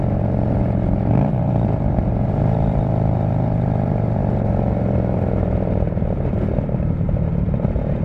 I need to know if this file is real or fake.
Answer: fake